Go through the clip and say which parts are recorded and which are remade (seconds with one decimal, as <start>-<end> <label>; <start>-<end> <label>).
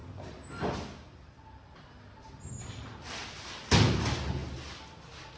0.0-5.4 recorded